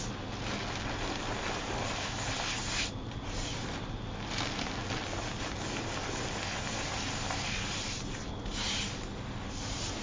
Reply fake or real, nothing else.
real